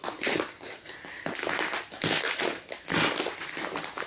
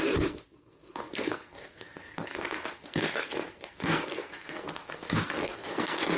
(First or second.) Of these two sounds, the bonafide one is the first